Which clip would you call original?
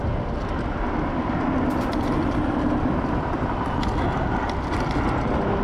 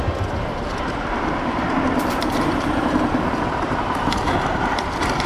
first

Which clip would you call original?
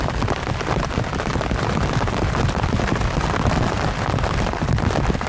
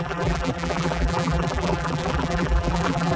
first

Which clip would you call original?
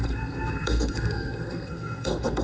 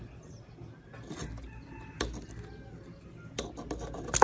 second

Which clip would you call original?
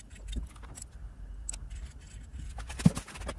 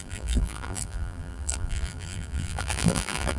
first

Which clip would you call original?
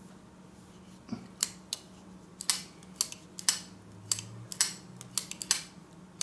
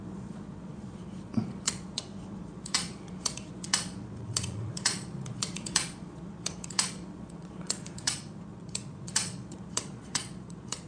first